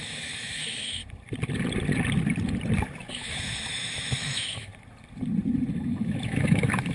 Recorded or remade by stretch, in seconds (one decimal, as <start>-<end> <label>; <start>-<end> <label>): 0.0-1.0 remade; 1.0-3.1 recorded; 3.1-4.7 remade; 4.7-5.7 recorded; 5.7-6.9 remade